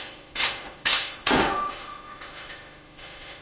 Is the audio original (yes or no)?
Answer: no